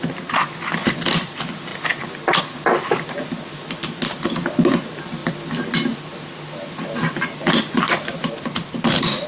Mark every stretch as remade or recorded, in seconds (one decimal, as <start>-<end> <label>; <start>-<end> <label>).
0.0-9.3 recorded